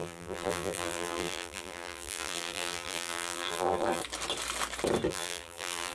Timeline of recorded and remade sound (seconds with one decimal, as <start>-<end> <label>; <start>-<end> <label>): 0.0-4.0 remade; 4.0-5.1 recorded; 5.1-5.9 remade